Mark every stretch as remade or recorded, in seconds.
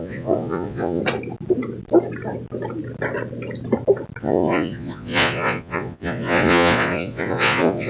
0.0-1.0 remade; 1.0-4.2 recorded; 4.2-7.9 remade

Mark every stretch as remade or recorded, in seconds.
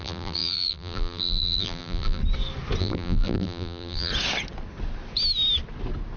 0.0-2.2 remade; 2.2-2.8 recorded; 2.8-4.1 remade; 4.1-6.2 recorded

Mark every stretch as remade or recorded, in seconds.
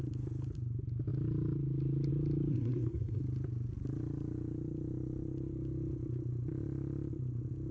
0.0-2.5 recorded; 2.5-3.2 remade; 3.2-7.7 recorded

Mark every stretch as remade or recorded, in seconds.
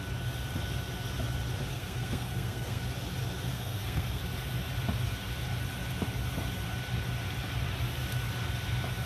0.0-1.7 recorded; 1.7-2.8 remade; 2.8-3.5 recorded; 3.5-4.2 remade; 4.2-9.1 recorded